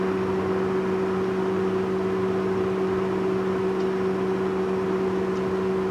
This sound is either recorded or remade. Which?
recorded